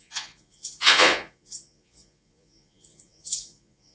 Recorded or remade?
remade